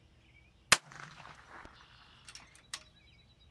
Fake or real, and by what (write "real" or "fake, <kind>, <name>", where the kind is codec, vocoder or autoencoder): real